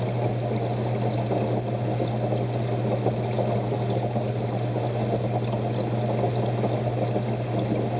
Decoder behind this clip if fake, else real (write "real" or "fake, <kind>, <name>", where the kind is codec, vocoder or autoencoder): real